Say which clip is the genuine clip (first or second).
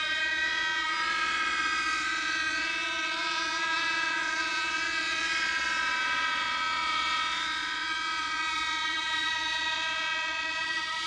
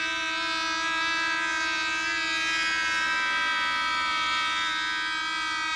second